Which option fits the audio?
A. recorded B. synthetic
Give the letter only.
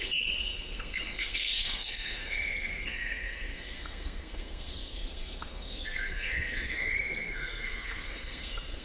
B